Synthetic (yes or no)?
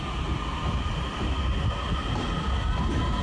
no